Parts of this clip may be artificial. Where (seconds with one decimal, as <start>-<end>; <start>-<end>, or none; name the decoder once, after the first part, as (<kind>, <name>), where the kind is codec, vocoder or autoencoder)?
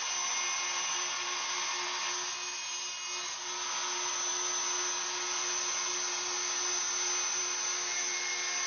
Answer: none